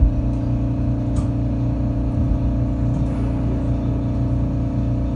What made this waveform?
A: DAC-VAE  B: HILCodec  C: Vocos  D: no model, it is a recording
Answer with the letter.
D